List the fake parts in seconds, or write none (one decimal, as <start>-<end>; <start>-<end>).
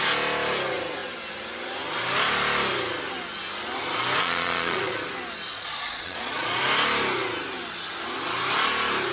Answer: 4.2-5.0; 5.5-6.6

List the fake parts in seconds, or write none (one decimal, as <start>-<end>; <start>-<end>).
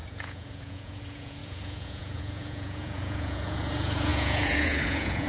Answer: 0.0-5.3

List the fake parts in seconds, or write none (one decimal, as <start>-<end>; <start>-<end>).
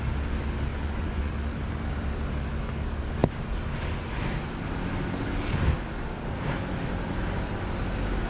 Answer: 0.7-1.3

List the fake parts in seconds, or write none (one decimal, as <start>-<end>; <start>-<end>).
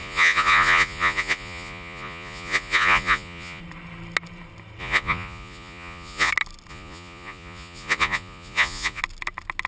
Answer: 0.0-3.6; 4.8-6.3; 6.7-9.0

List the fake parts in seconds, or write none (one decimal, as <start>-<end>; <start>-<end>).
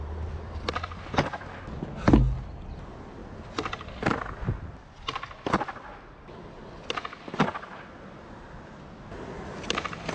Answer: none